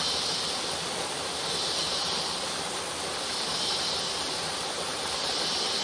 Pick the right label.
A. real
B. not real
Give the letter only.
A